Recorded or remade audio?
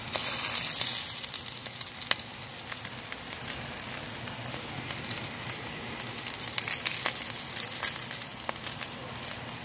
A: recorded